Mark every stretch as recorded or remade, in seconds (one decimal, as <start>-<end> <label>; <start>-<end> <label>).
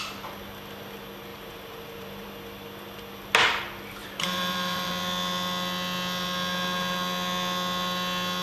0.0-1.3 recorded; 1.3-2.3 remade; 2.3-4.0 recorded; 4.0-4.9 remade; 4.9-8.4 recorded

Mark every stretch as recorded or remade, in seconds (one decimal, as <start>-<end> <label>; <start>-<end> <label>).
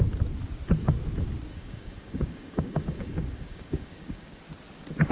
0.0-1.5 recorded; 1.5-4.4 remade; 4.4-5.1 recorded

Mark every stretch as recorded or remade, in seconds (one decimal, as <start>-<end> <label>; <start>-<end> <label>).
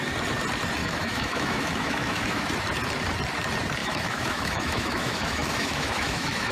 0.0-0.8 recorded; 0.8-2.5 remade; 2.5-3.8 recorded; 3.8-6.5 remade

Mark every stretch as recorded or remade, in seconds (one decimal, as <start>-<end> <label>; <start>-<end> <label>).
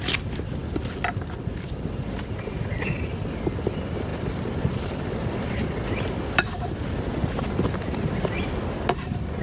0.0-4.1 recorded; 4.1-7.3 remade; 7.3-9.4 recorded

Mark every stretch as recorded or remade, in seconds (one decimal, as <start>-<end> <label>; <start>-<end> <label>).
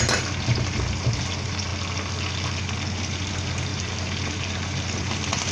0.0-5.5 recorded